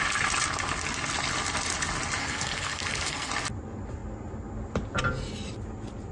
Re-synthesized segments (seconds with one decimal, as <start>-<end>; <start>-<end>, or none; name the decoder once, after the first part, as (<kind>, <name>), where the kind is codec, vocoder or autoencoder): 2.2-3.3 (codec, SNAC)